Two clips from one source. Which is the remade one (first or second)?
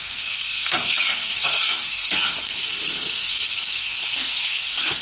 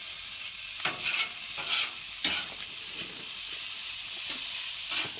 first